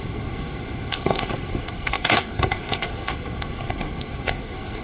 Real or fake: fake